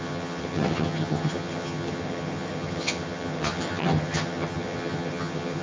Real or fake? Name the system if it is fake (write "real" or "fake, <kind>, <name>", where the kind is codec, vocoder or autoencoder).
fake, vocoder, HiFi-GAN